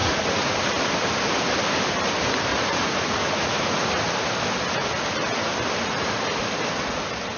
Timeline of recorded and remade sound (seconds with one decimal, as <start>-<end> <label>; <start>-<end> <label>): 0.0-0.6 remade; 0.6-2.5 recorded; 2.5-4.1 remade; 4.1-7.4 recorded